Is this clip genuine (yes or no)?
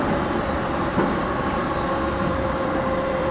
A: no